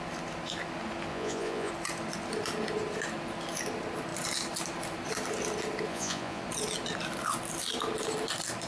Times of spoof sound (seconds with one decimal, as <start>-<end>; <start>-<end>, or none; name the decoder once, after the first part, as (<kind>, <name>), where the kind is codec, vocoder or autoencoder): 1.1-1.7 (vocoder, Vocos); 5.9-6.4